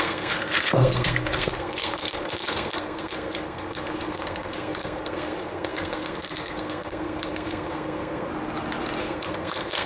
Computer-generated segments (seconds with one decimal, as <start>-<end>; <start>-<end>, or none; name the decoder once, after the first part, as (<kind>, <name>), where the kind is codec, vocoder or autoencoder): 0.0-8.3 (codec, SNAC); 9.0-9.9